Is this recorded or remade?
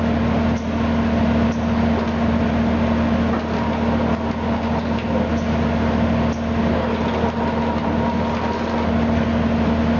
recorded